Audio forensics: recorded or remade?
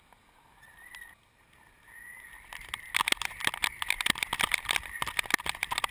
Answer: recorded